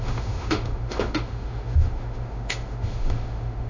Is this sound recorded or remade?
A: remade